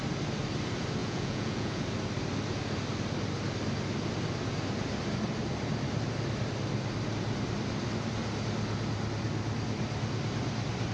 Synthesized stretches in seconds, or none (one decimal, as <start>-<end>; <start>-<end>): 1.0-1.8